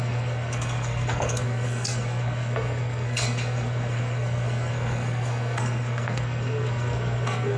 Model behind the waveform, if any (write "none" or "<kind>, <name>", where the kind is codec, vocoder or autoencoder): codec, SNAC